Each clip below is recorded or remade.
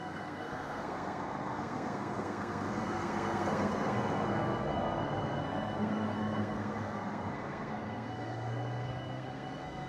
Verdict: remade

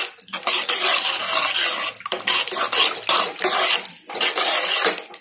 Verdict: recorded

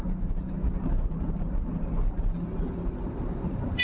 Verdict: recorded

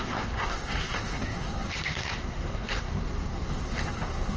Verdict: remade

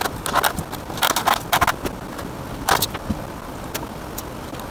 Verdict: recorded